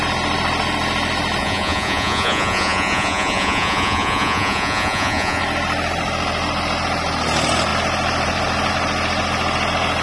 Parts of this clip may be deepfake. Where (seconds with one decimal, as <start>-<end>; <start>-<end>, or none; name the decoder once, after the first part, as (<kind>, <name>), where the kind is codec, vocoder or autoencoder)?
1.4-5.4 (vocoder, Vocos)